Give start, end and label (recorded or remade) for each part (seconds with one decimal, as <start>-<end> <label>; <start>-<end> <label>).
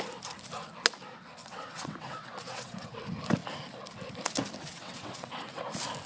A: 0.0-1.4 recorded; 1.4-3.0 remade; 3.0-4.7 recorded; 4.7-5.6 remade; 5.6-6.1 recorded